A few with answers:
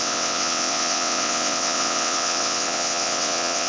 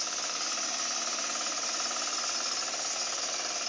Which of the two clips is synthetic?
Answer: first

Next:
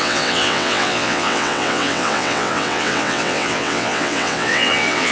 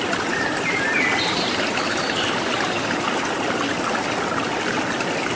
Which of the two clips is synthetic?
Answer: first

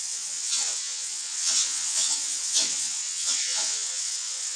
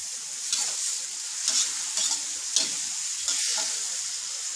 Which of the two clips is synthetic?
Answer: first